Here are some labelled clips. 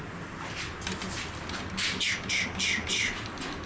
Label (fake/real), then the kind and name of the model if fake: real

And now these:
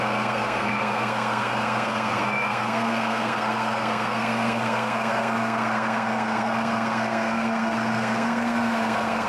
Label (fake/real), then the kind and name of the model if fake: fake, codec, SNAC